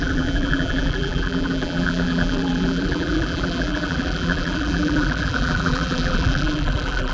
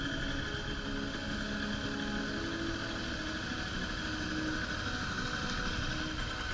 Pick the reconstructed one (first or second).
first